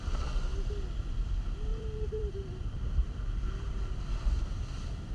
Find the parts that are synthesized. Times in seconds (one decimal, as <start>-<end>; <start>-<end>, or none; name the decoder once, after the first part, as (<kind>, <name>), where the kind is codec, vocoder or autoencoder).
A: 1.7-5.1 (vocoder, BigVGAN v2)

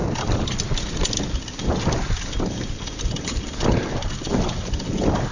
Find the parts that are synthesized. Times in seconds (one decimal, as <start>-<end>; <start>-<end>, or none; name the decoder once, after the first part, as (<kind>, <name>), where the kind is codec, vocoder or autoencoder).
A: none

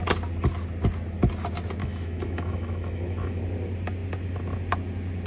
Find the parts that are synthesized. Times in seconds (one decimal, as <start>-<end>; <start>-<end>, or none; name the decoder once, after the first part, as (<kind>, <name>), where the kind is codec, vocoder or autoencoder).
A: 1.8-3.4 (autoencoder, DAC-VAE)

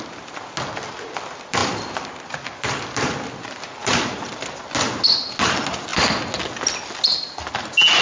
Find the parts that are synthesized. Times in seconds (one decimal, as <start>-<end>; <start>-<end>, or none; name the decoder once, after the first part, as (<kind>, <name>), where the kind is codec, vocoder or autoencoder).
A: none

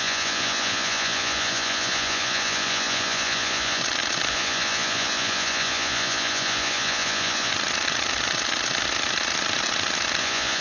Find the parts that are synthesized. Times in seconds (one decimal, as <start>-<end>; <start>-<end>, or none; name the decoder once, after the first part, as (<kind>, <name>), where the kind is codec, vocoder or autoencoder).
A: 0.0-3.8 (vocoder, Vocos); 4.3-7.5; 10.2-10.6

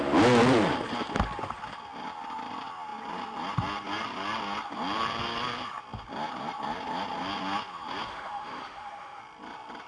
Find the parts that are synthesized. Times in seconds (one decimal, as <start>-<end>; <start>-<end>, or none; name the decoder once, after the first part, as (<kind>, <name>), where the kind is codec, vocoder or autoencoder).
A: 8.1-9.2 (autoencoder, DAC-VAE)

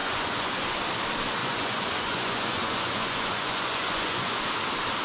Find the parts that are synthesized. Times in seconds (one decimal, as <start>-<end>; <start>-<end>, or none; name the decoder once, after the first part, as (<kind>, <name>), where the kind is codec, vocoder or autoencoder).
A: 0.0-0.8 (vocoder, Vocos); 1.4-4.4